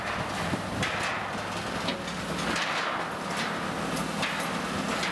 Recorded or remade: recorded